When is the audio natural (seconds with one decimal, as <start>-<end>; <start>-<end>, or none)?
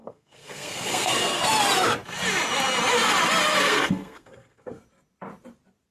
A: 1.4-3.6; 4.8-5.9